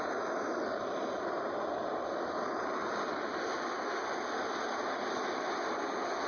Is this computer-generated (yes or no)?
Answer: no